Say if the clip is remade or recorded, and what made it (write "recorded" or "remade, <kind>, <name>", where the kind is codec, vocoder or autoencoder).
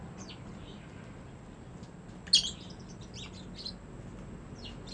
recorded